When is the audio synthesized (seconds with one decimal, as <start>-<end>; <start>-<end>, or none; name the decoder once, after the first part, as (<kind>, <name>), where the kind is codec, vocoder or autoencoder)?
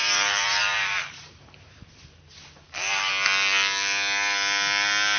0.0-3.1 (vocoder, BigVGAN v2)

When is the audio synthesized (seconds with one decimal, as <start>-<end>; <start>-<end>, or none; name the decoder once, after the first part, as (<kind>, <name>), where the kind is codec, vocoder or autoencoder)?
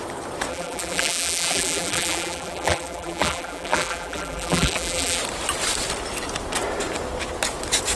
0.5-5.2 (vocoder, BigVGAN v2)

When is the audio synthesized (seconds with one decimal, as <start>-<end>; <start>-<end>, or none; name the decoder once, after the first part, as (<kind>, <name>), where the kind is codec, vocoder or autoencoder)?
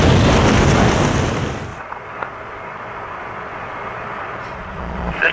1.7-5.3 (vocoder, Vocos)